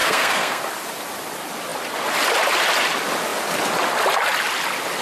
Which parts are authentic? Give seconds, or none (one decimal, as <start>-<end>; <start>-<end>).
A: 0.6-5.0